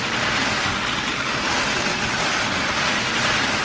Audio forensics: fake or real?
real